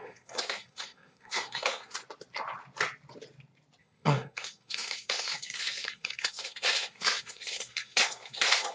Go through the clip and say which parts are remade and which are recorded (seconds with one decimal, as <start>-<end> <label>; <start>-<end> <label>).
0.0-2.0 remade; 2.0-3.8 recorded; 3.8-8.7 remade